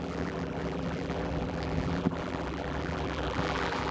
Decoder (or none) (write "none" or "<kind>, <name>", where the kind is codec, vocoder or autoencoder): vocoder, BigVGAN v2